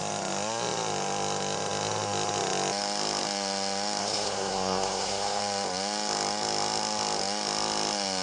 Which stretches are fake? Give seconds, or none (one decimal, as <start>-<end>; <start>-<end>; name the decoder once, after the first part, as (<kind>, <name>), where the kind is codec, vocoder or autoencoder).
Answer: 4.0-5.4 (codec, SNAC)